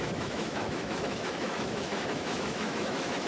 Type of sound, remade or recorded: remade